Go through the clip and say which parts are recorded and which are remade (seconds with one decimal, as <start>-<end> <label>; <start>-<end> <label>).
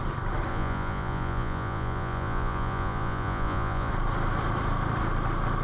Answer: 0.0-0.5 recorded; 0.5-3.9 remade; 3.9-5.6 recorded